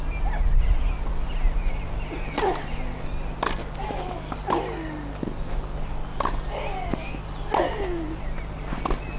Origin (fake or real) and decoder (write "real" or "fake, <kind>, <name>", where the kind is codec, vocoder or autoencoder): real